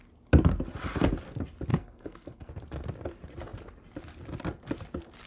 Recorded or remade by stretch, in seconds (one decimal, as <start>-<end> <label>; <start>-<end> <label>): 0.0-1.7 recorded; 1.7-2.5 remade; 2.5-5.3 recorded